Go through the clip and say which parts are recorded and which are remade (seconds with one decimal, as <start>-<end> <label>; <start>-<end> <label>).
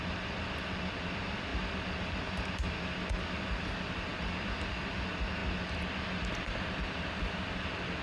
0.0-8.0 recorded